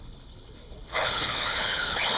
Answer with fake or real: fake